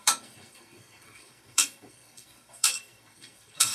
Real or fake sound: fake